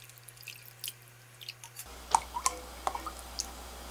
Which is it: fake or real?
real